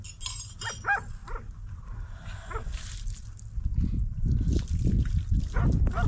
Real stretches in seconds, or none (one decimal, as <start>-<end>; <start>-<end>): 0.0-6.1